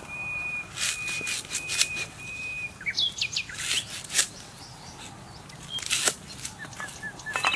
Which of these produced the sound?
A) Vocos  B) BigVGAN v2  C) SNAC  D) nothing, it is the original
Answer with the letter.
D